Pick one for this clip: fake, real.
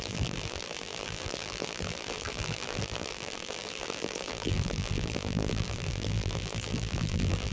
fake